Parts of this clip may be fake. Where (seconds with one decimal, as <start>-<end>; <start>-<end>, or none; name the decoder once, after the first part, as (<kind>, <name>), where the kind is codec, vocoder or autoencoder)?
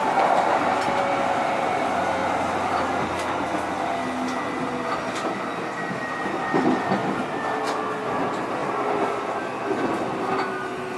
2.2-2.8 (vocoder, BigVGAN v2); 8.6-9.4